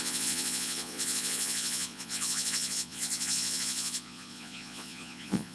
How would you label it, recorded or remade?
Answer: remade